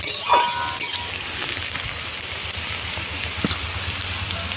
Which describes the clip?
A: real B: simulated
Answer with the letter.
A